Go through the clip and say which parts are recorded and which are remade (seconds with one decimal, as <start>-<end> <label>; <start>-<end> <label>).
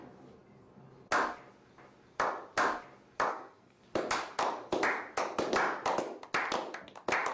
0.0-3.3 recorded; 3.3-3.8 remade; 3.8-7.3 recorded